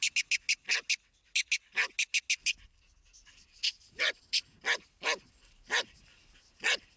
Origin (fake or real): real